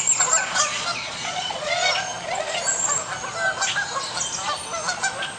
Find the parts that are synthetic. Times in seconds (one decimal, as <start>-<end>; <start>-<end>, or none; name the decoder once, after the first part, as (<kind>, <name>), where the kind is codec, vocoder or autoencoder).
0.0-2.1 (vocoder, Vocos)